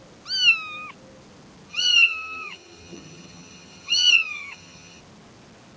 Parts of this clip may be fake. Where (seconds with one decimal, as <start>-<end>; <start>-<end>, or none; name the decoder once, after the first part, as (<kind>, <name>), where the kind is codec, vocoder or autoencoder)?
1.7-5.0 (vocoder, HiFi-GAN)